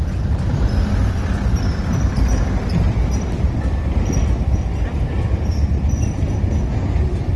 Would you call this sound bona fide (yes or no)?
no